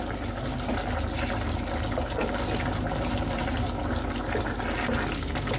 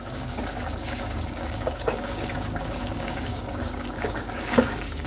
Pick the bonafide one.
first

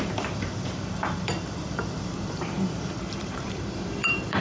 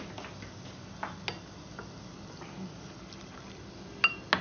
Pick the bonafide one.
second